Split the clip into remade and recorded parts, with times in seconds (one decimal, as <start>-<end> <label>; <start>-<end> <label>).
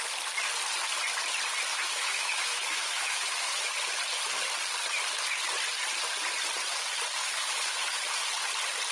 0.0-1.7 recorded; 1.7-3.7 remade; 3.7-7.2 recorded; 7.2-8.0 remade; 8.0-8.9 recorded